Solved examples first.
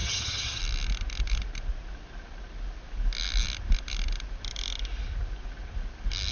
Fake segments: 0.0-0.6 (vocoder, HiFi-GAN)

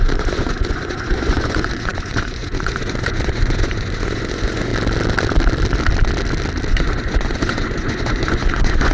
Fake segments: 0.0-4.7 (vocoder, Vocos); 6.7-8.9

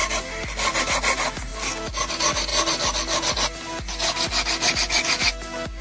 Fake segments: none

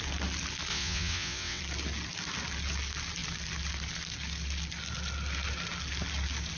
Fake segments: 0.7-1.6 (vocoder, WaveNeXt)

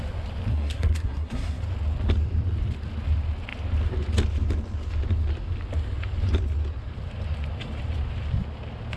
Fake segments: 0.5-1.6 (codec, SNAC)

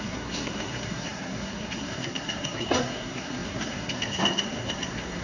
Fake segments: 0.0-5.2 (codec, SNAC)